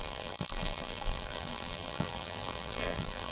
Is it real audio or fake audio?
fake